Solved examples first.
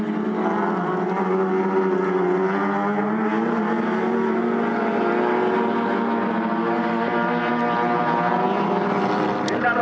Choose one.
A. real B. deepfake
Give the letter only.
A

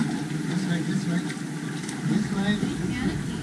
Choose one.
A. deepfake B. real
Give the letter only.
B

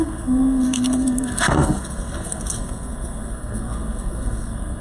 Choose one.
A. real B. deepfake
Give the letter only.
B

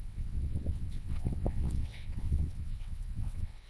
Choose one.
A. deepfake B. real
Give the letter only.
A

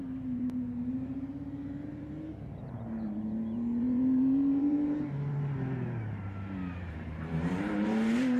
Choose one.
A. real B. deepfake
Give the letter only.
B